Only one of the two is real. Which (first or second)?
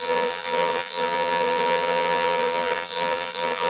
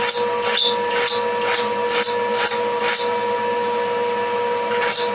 second